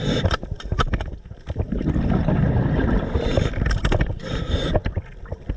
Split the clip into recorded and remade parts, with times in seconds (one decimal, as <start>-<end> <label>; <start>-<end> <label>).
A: 0.0-5.6 recorded